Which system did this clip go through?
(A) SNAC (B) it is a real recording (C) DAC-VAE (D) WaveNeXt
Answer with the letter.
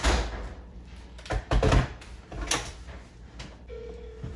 B